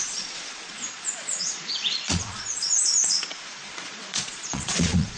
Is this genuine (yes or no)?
no